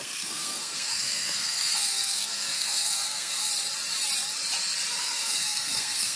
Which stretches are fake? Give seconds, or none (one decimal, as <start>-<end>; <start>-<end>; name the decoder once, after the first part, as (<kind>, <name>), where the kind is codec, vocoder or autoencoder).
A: 0.0-3.5 (codec, SNAC); 5.0-6.2